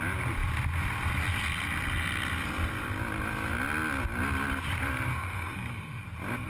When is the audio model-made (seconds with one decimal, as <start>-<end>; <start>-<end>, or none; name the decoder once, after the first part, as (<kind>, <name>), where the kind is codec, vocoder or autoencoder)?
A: 5.1-6.0 (autoencoder, DAC-VAE)